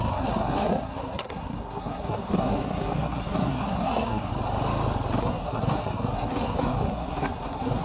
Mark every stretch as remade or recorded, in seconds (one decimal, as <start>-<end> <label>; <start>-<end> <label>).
0.0-4.3 remade; 4.3-5.2 recorded; 5.2-7.8 remade

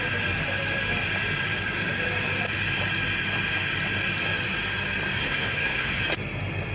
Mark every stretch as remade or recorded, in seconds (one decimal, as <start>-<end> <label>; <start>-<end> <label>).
0.0-5.2 recorded; 5.2-6.0 remade; 6.0-6.7 recorded

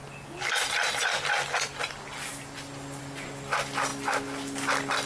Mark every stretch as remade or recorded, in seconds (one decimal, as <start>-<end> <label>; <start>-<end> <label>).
0.0-5.1 recorded

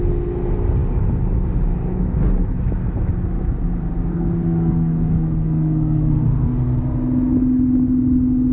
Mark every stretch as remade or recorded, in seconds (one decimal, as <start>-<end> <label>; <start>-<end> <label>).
0.0-4.1 recorded; 4.1-6.8 remade; 6.8-8.5 recorded

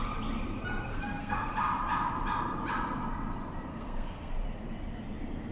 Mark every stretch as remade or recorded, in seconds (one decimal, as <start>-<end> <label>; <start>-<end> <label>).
0.0-0.9 recorded; 0.9-1.5 remade; 1.5-3.7 recorded; 3.7-4.3 remade; 4.3-5.5 recorded

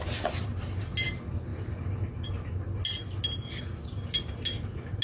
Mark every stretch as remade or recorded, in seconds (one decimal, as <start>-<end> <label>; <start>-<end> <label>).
0.0-5.0 recorded

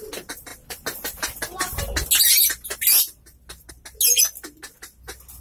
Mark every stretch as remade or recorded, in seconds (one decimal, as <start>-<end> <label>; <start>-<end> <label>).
0.0-5.4 recorded